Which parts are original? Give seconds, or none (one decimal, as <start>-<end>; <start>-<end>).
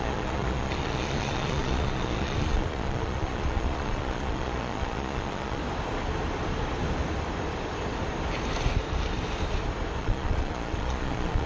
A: 5.6-10.0